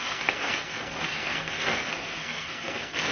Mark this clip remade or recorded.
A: remade